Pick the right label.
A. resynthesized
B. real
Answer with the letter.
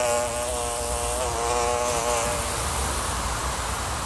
B